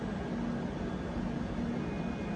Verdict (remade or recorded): recorded